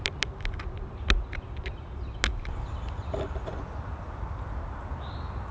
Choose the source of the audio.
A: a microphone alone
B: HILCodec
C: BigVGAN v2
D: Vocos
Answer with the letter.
A